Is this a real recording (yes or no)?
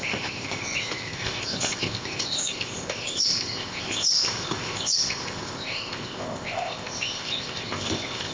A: no